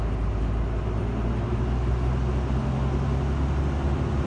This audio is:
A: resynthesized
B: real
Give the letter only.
B